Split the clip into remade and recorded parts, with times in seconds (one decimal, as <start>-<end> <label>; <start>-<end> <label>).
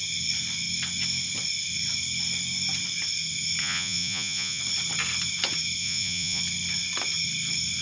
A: 0.0-3.6 recorded; 3.6-4.6 remade; 4.6-5.8 recorded; 5.8-6.4 remade; 6.4-7.8 recorded